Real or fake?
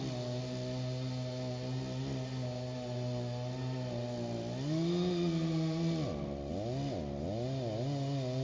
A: real